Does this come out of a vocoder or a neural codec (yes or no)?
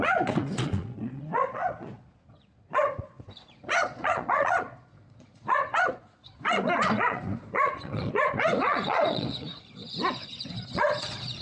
yes